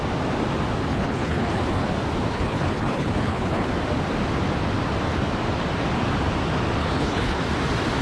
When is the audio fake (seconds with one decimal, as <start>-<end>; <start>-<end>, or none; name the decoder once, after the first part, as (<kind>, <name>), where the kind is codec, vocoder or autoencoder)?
0.9-1.9 (codec, HILCodec); 2.3-3.7; 6.8-7.4